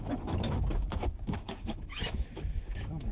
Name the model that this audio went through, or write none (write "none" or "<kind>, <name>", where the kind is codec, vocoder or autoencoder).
autoencoder, DAC-VAE